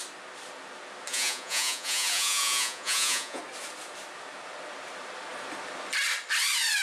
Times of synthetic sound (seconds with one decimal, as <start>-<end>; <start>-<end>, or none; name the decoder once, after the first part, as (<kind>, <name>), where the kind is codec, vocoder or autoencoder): 1.1-3.4 (vocoder, Vocos)

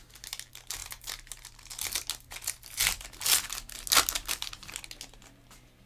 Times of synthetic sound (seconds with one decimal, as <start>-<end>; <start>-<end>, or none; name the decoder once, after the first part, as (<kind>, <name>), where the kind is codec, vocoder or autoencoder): none

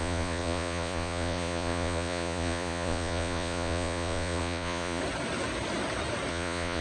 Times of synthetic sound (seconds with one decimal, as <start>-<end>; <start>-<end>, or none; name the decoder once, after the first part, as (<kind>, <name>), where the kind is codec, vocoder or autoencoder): 0.0-5.0 (vocoder, Vocos); 6.3-6.8